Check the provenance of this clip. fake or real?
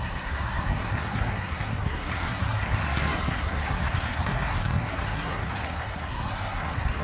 fake